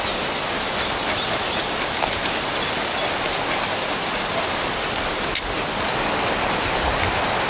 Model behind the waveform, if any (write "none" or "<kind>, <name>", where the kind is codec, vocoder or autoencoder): none